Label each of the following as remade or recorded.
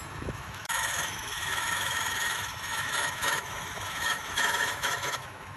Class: remade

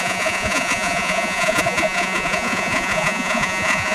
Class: remade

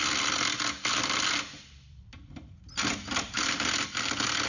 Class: recorded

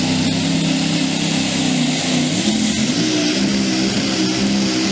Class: recorded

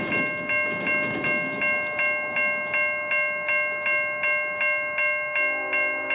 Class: recorded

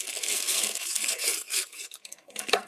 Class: remade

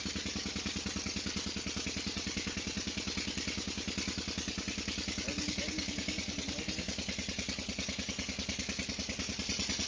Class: recorded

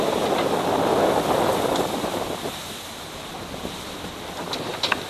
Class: recorded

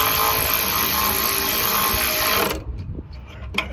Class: recorded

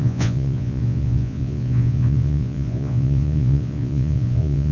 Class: remade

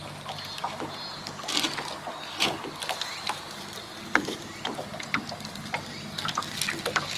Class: recorded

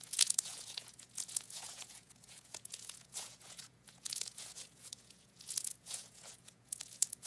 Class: remade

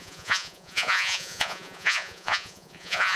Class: remade